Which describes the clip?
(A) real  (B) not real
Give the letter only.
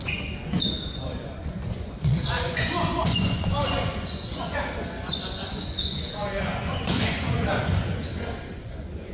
B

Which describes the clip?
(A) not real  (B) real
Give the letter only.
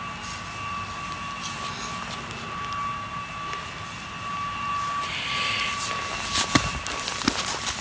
B